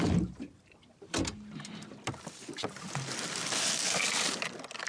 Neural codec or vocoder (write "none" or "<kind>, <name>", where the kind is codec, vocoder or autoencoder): none